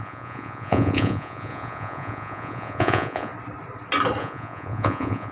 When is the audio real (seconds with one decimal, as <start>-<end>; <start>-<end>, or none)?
3.3-4.2